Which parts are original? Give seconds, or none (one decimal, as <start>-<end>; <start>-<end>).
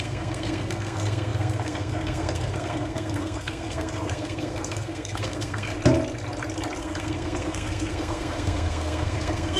5.7-6.8